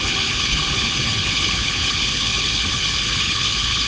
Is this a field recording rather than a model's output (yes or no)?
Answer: no